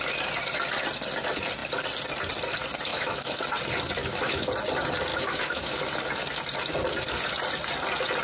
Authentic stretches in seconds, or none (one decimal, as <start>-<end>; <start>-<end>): 0.0-2.9; 3.4-4.0; 4.5-5.1; 5.8-8.2